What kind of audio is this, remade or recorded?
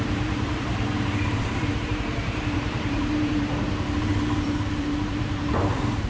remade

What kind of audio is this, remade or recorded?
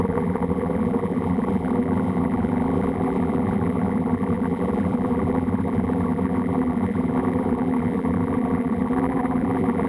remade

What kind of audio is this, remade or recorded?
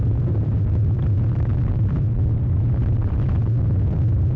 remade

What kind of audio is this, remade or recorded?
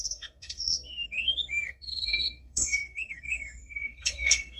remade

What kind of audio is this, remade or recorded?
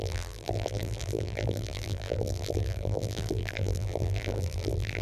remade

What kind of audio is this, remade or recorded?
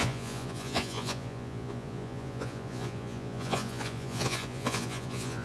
remade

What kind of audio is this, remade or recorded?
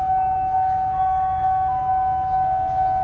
remade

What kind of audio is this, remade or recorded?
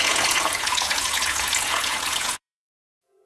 remade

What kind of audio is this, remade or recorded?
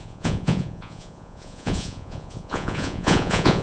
remade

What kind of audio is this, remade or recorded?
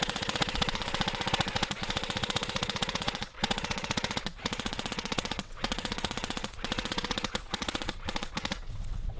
remade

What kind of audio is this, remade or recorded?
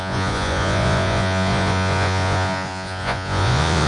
remade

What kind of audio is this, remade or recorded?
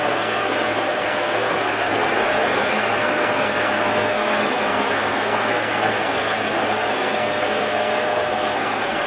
remade